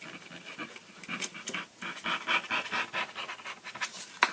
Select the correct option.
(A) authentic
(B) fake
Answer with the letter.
A